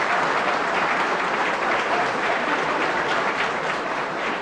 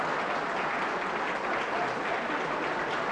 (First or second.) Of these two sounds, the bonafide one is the second